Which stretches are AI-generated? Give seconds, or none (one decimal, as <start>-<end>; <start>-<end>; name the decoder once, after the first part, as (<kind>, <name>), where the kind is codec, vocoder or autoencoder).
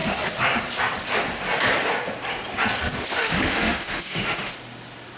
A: 3.2-4.5 (autoencoder, DAC-VAE)